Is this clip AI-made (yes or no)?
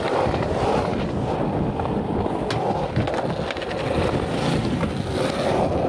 no